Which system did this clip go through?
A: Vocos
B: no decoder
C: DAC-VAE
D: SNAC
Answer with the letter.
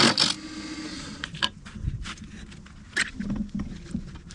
B